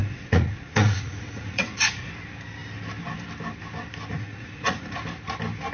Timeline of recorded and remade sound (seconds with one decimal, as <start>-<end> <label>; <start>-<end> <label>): 0.0-2.1 remade; 2.1-4.1 recorded; 4.1-5.0 remade; 5.0-5.7 recorded